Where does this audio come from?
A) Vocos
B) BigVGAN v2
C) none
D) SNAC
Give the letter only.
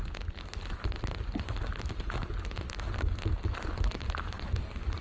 C